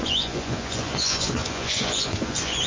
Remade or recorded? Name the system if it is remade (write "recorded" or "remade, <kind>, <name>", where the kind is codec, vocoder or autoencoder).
remade, vocoder, Vocos